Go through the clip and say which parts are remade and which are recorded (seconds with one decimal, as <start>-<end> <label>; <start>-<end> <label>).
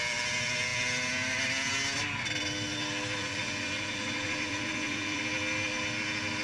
0.0-3.2 recorded; 3.2-5.2 remade; 5.2-6.4 recorded